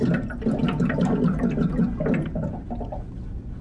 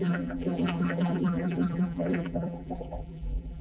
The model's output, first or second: second